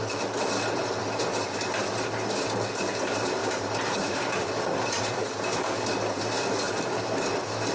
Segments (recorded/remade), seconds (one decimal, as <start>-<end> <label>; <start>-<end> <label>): 0.0-3.4 recorded; 3.4-5.0 remade; 5.0-7.7 recorded